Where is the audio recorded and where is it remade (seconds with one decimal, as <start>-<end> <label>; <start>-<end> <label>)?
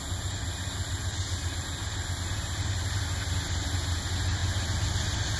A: 0.0-5.4 recorded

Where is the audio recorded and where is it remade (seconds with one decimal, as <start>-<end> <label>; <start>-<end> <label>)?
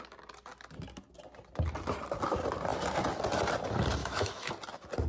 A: 0.0-4.0 recorded; 4.0-4.5 remade; 4.5-5.1 recorded